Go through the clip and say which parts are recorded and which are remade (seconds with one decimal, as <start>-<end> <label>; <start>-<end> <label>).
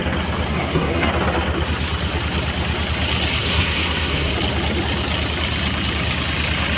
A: 0.0-0.5 recorded; 0.5-1.1 remade; 1.1-3.4 recorded; 3.4-4.3 remade; 4.3-6.8 recorded